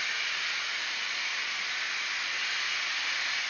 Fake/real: real